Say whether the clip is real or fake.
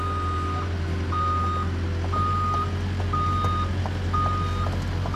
real